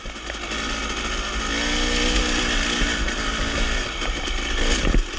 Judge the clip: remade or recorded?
recorded